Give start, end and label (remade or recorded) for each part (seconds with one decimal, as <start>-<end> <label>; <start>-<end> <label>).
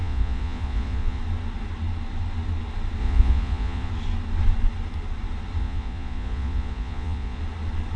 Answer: 0.0-1.2 remade; 1.2-3.0 recorded; 3.0-3.9 remade; 3.9-5.6 recorded; 5.6-7.4 remade; 7.4-8.0 recorded